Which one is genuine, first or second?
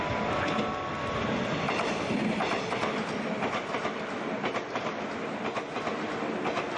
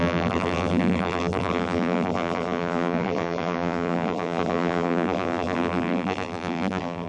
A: first